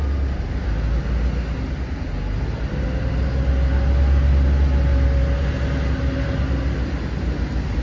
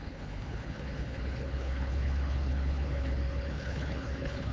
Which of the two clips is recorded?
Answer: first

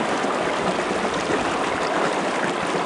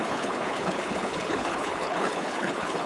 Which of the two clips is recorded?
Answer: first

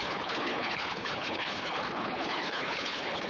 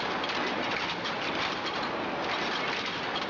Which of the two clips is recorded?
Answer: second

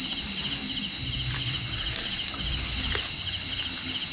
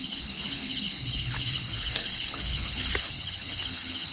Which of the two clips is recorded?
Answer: first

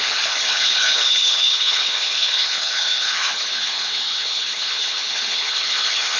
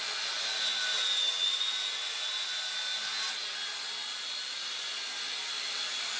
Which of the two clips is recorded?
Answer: second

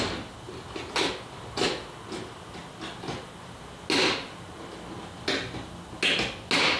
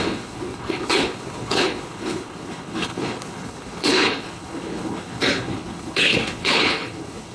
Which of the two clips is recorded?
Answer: first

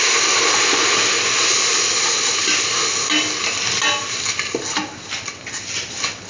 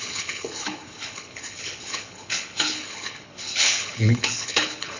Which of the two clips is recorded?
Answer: first